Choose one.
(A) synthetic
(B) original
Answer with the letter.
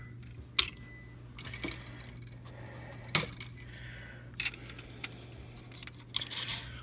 B